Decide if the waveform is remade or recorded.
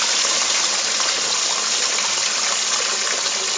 recorded